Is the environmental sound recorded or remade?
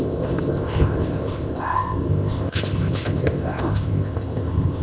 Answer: remade